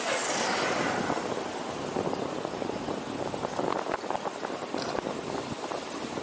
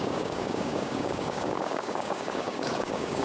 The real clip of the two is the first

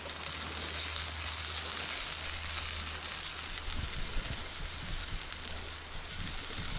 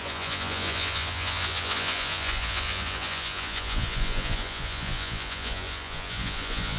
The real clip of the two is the first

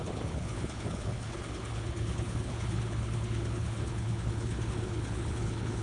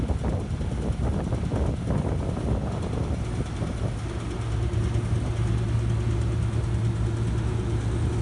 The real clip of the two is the second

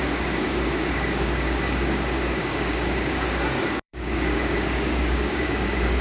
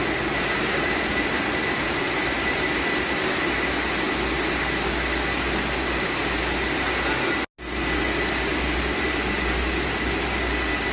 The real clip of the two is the second